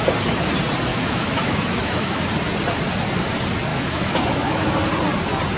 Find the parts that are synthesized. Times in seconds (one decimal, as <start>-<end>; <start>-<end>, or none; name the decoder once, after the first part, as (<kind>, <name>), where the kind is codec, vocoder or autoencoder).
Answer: 0.9-2.2 (autoencoder, DAC-VAE); 3.7-4.7